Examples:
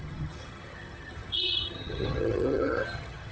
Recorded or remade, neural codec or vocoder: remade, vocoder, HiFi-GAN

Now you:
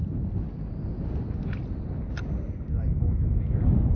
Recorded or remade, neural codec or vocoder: recorded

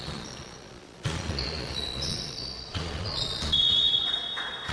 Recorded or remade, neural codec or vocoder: remade, vocoder, Vocos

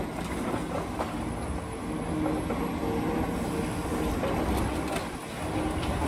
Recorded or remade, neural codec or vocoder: recorded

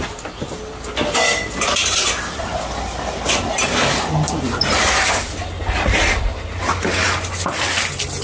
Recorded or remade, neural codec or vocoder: recorded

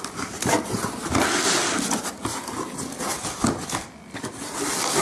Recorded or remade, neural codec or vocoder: recorded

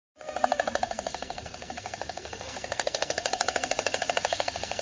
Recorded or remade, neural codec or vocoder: remade, codec, SNAC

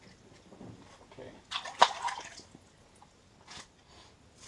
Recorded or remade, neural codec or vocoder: recorded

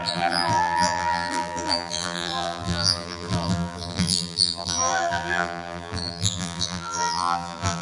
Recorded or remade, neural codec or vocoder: remade, vocoder, BigVGAN v2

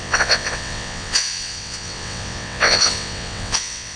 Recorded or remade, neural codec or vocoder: remade, vocoder, WaveNeXt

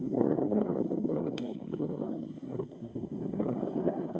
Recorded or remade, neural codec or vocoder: remade, codec, SNAC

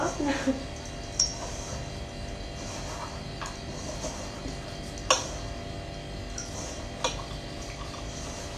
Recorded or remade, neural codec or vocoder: recorded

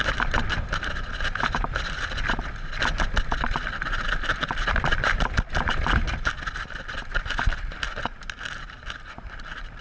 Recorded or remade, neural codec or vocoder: recorded